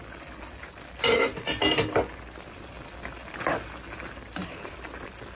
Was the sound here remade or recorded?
recorded